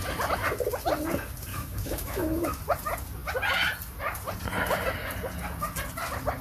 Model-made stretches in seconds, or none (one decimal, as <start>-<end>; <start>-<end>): 1.5-2.6